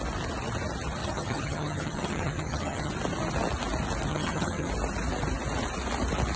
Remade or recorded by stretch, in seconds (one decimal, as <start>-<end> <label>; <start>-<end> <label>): 0.0-1.0 recorded; 1.0-2.9 remade; 2.9-4.1 recorded; 4.1-4.7 remade; 4.7-6.4 recorded